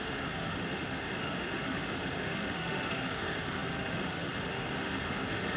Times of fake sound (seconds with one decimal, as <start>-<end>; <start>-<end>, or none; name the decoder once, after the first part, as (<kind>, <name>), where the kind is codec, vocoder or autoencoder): 0.0-5.6 (autoencoder, DAC-VAE)

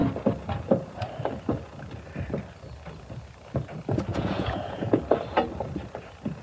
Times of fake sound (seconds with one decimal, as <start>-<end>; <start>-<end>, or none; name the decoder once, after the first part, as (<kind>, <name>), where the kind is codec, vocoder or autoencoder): 4.1-5.0 (vocoder, Vocos)

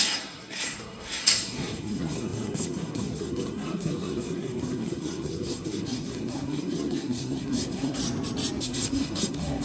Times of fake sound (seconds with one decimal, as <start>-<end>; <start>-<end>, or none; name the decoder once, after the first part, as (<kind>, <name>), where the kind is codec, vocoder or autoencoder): 0.0-8.0 (codec, SNAC); 8.6-9.6